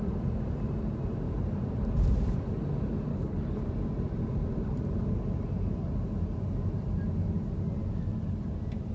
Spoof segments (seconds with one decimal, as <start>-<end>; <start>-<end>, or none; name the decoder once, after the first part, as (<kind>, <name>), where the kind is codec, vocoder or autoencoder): 3.1-3.6 (codec, HILCodec)